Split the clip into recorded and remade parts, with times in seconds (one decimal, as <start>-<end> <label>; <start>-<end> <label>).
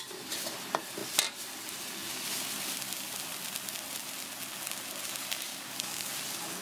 0.0-5.5 recorded; 5.5-6.1 remade; 6.1-6.6 recorded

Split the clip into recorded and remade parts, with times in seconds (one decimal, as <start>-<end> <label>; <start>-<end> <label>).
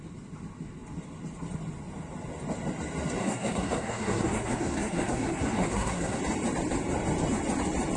0.0-3.2 recorded; 3.2-6.2 remade; 6.2-8.0 recorded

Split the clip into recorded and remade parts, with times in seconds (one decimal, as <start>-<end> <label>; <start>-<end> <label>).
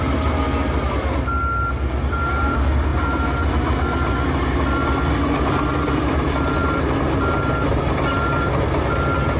0.0-9.4 recorded